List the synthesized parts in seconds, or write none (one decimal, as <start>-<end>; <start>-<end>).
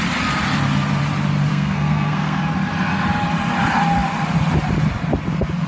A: 1.5-2.4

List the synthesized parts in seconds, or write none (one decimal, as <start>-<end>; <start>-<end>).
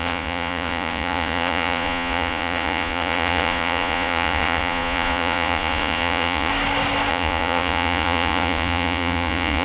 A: 0.0-6.5; 7.1-9.6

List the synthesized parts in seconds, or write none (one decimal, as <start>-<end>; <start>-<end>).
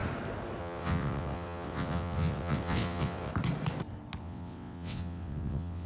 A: 0.6-3.3; 4.2-5.9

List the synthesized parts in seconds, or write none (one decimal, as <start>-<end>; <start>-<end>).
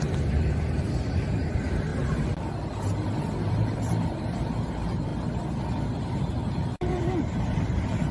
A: 0.0-1.9; 3.5-5.1; 6.1-8.1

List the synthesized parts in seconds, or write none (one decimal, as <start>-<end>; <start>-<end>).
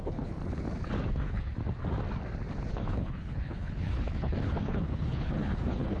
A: 0.0-0.4; 1.1-1.6; 2.7-6.0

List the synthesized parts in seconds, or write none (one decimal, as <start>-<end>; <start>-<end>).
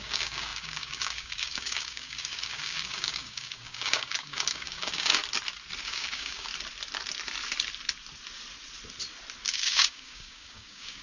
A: 0.0-5.2; 5.8-6.5; 9.5-11.0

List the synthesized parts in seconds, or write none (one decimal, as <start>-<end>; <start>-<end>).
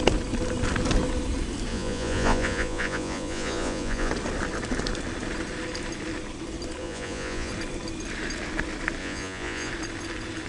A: 1.7-4.1; 6.8-7.5; 9.0-9.7